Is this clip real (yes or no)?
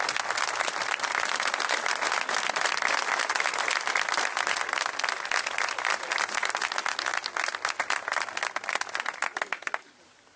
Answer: yes